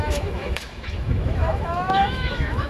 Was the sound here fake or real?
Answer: fake